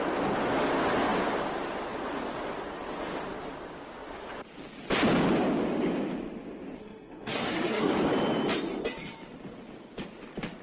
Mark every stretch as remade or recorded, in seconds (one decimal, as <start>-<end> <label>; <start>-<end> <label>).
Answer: 0.0-6.8 recorded; 6.8-7.9 remade; 7.9-10.6 recorded